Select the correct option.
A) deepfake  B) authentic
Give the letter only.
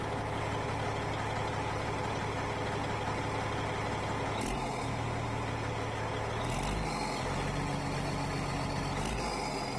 B